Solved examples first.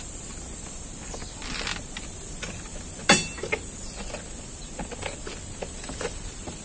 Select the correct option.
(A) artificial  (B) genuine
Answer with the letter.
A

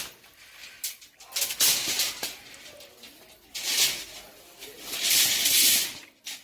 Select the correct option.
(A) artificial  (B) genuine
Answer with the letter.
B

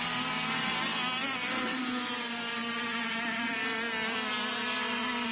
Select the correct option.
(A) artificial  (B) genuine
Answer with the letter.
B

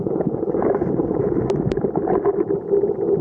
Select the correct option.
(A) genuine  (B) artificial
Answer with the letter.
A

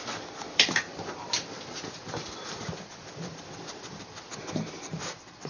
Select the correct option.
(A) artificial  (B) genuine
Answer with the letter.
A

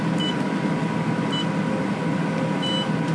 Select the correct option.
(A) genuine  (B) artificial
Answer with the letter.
A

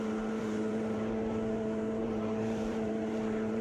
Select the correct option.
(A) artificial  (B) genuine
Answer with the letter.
A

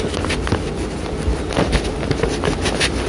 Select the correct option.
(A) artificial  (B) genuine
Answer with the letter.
B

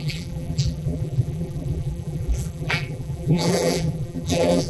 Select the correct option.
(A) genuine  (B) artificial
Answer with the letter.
B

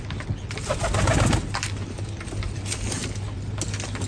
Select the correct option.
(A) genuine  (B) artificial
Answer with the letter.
A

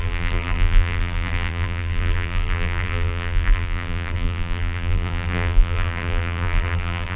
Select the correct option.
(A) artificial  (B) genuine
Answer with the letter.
A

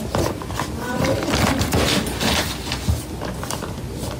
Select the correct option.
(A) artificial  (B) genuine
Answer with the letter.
B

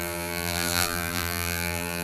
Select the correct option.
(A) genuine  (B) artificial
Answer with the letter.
B